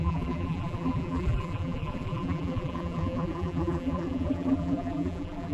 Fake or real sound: fake